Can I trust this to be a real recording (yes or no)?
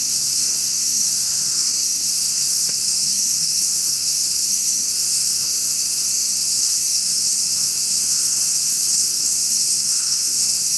no